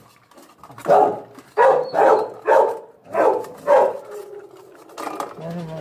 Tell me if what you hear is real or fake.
real